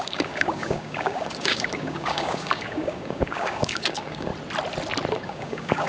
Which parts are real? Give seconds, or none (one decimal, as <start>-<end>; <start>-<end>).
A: 4.3-5.1